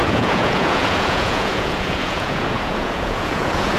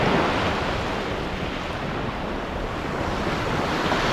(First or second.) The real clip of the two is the second